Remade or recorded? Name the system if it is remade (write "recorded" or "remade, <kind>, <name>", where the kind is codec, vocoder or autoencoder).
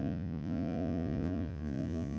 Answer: remade, vocoder, Vocos